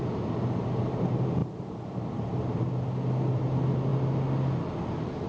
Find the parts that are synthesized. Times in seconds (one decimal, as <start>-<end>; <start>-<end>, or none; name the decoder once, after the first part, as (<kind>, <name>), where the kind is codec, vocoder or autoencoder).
1.4-2.6 (vocoder, BigVGAN v2)